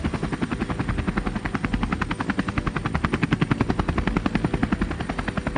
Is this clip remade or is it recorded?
recorded